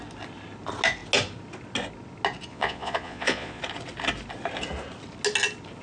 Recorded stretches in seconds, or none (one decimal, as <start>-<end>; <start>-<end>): 0.0-2.5; 3.6-5.8